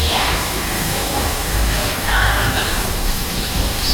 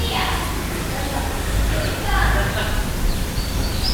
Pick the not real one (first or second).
first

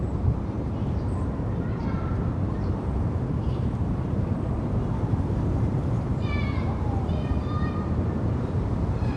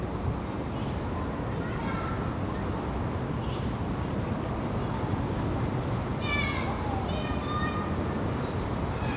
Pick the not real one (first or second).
first